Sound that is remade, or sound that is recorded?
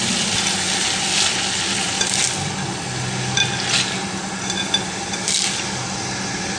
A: recorded